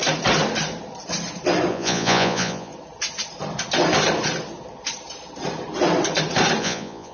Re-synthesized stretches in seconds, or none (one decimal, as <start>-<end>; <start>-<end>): 1.7-2.7; 6.6-7.1